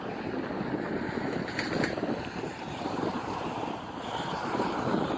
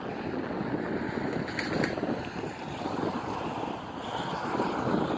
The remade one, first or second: first